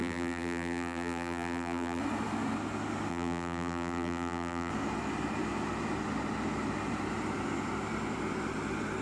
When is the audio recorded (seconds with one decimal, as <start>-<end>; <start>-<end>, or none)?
2.0-3.1; 4.7-9.0